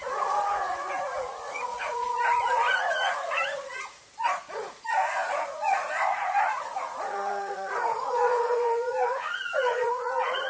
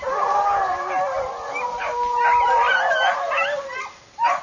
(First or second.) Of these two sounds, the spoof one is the first